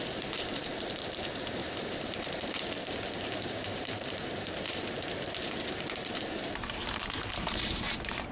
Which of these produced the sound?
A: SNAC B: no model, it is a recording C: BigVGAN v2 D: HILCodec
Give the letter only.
C